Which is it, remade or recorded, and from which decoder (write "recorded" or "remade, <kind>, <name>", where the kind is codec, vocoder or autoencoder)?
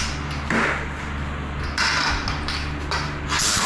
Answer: recorded